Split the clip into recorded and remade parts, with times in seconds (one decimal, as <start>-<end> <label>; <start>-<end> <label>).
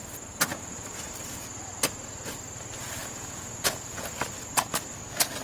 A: 0.0-0.5 recorded; 0.5-1.1 remade; 1.1-3.0 recorded; 3.0-4.1 remade; 4.1-5.4 recorded